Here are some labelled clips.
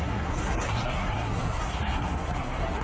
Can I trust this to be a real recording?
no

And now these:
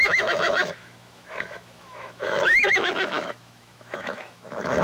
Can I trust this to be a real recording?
no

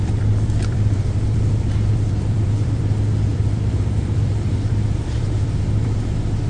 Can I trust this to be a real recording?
no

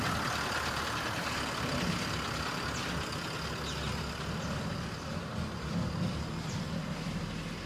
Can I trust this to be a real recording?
yes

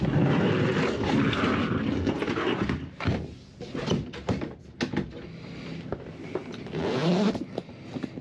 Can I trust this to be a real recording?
yes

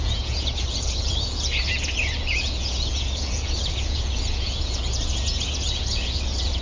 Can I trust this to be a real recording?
no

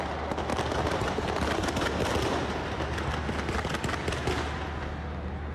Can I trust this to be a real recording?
yes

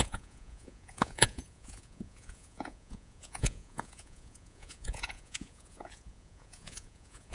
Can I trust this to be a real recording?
no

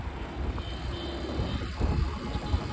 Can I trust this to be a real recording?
yes